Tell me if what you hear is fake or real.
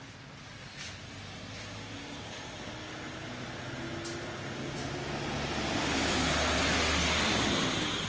real